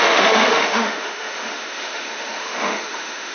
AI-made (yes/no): yes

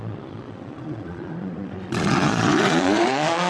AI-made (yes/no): yes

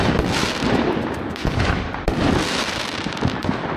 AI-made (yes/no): no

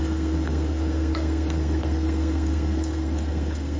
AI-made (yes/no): yes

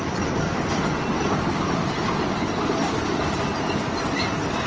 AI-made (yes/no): no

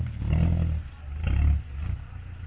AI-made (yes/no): no